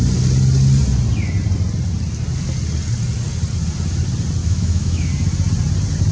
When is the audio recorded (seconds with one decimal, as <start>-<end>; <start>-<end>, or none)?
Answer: 0.0-4.4; 5.1-6.1